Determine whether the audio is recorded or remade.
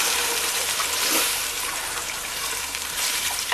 remade